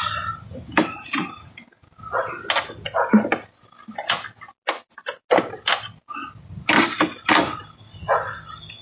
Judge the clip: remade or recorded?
recorded